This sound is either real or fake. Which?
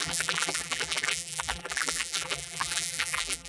fake